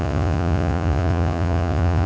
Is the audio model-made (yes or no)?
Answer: yes